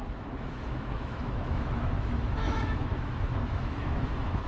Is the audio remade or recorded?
remade